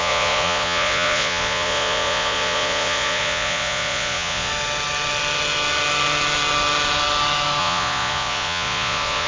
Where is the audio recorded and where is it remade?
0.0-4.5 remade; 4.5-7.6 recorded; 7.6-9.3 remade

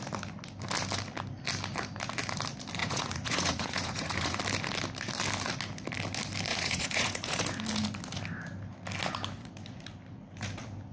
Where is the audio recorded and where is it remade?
0.0-2.8 recorded; 2.8-4.4 remade; 4.4-6.5 recorded; 6.5-7.4 remade; 7.4-10.9 recorded